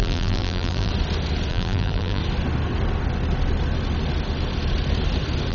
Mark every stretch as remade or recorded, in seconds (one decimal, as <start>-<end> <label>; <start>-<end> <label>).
0.0-0.9 remade; 0.9-1.5 recorded; 1.5-2.2 remade; 2.2-5.5 recorded